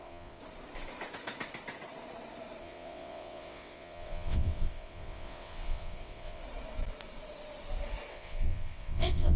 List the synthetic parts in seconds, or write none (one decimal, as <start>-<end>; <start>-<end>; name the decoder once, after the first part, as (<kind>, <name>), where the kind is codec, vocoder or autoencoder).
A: 0.0-0.4 (vocoder, WaveNeXt); 2.6-6.4; 8.1-9.4